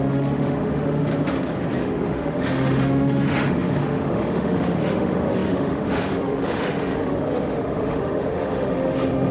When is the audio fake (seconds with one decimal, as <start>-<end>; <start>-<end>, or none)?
0.0-1.1; 1.8-9.3